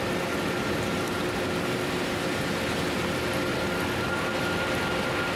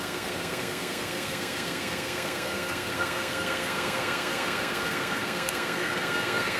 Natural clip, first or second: first